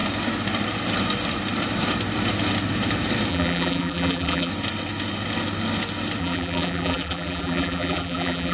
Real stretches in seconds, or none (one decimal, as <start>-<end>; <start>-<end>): 0.0-3.3; 4.5-6.2

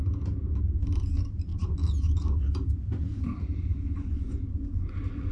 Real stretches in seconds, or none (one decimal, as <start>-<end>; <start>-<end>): 0.0-0.6

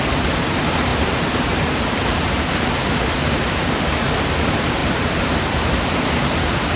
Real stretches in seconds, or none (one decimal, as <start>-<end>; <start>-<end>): 0.0-3.2; 4.1-4.8; 5.4-6.8

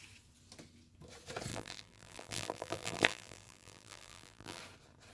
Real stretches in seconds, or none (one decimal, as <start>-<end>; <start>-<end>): 0.0-1.5; 4.6-5.1

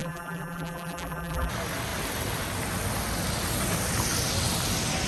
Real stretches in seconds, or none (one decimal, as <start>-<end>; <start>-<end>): 1.5-5.1

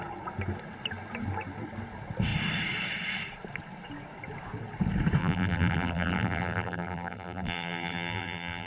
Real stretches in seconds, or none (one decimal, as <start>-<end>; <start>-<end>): 0.0-5.2